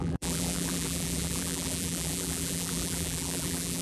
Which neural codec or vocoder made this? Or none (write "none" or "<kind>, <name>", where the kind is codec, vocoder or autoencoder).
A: vocoder, BigVGAN v2